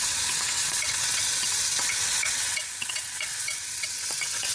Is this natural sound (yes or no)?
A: no